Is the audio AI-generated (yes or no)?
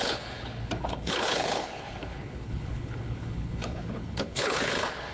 yes